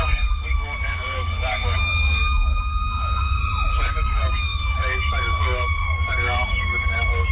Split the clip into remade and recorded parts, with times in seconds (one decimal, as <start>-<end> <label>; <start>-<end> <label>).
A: 0.0-3.4 remade; 3.4-3.9 recorded; 3.9-7.3 remade